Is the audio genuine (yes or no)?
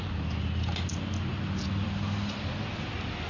yes